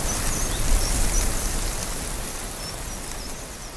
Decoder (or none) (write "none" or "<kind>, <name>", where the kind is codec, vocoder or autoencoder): none